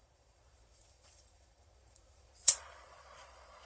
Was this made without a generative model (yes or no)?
no